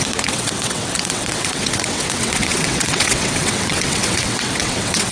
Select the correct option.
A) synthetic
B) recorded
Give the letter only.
A